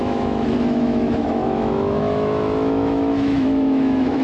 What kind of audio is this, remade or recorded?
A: remade